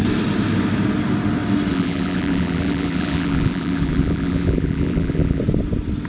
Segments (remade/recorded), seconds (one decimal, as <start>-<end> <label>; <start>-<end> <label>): 0.0-1.7 recorded; 1.7-5.4 remade; 5.4-6.1 recorded